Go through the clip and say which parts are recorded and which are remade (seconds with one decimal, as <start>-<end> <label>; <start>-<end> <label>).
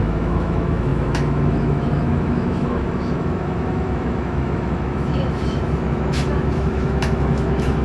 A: 0.0-7.8 remade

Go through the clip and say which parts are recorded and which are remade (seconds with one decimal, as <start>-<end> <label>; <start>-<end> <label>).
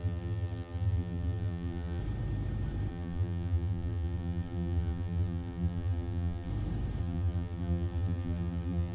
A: 0.0-2.0 remade; 2.0-2.9 recorded; 2.9-6.5 remade; 6.5-7.0 recorded; 7.0-8.9 remade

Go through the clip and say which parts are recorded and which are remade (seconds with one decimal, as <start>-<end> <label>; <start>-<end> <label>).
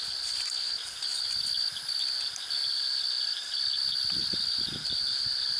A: 0.0-5.6 recorded